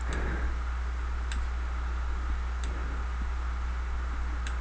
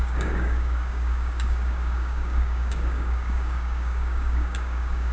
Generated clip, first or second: second